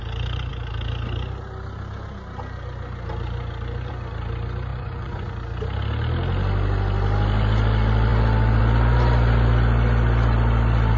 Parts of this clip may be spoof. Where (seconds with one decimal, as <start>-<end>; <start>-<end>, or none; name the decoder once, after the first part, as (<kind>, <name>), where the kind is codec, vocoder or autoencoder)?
4.7-5.3 (vocoder, Vocos)